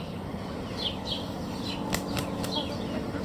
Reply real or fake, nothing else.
real